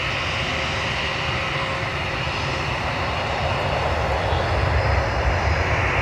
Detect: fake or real real